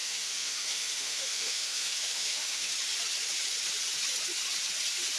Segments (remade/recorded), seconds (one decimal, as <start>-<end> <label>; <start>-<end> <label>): 0.0-2.7 remade; 2.7-5.2 recorded